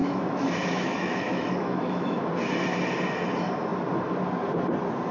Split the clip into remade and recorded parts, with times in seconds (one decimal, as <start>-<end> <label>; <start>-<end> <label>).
0.0-2.3 remade; 2.3-5.1 recorded